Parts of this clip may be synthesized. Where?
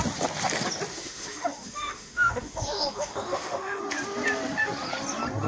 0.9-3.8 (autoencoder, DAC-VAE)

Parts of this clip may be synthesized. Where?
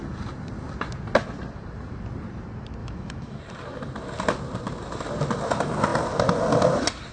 2.8-3.4 (autoencoder, DAC-VAE)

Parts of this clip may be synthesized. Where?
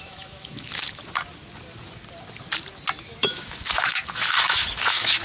0.0-1.0 (autoencoder, DAC-VAE); 3.0-5.2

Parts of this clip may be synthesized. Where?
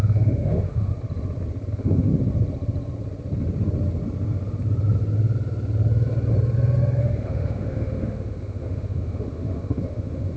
0.0-0.9 (autoencoder, DAC-VAE); 1.7-2.1; 7.0-10.4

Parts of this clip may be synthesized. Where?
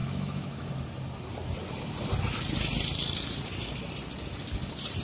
0.0-0.7 (autoencoder, DAC-VAE)